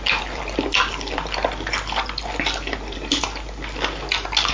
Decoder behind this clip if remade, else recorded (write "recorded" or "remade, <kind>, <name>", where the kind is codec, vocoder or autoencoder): recorded